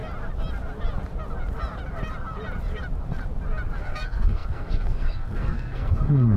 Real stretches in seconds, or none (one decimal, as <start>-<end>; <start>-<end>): 0.0-3.8